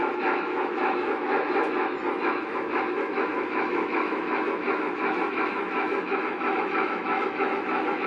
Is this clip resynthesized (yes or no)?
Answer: yes